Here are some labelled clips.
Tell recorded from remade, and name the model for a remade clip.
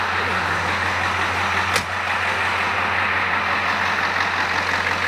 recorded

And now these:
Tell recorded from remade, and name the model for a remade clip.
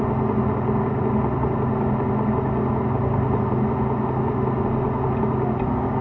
recorded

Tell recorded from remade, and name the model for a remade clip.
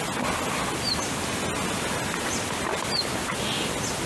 recorded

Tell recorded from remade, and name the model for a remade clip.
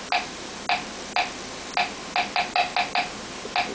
recorded